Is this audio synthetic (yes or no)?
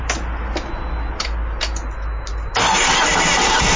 no